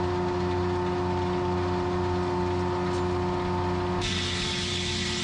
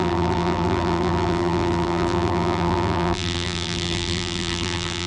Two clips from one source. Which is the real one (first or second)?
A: first